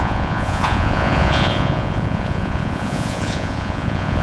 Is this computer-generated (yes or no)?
yes